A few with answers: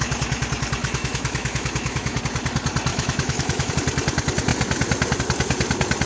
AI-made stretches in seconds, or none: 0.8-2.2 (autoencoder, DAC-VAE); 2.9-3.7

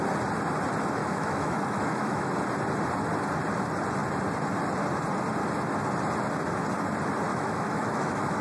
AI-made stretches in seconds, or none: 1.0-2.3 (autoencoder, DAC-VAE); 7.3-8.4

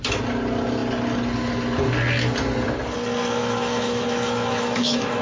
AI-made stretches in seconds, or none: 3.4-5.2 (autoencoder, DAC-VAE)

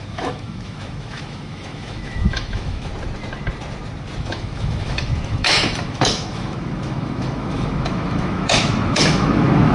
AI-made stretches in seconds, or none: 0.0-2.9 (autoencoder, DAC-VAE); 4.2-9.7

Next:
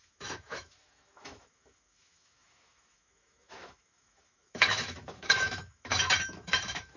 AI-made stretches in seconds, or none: 0.0-7.0 (autoencoder, DAC-VAE)